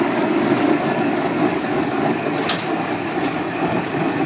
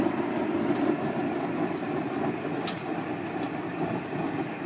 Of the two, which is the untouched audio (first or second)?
second